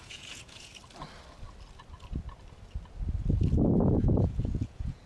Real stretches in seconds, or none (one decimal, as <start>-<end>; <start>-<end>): 0.7-3.8